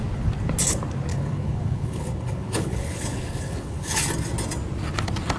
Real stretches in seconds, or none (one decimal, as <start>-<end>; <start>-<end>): 0.0-1.1; 4.1-5.4